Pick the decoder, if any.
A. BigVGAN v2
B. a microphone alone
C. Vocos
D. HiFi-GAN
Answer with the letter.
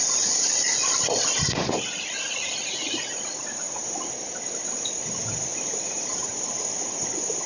A